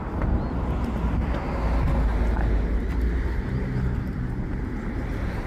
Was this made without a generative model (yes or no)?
yes